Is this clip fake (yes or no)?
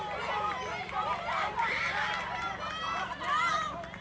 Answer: no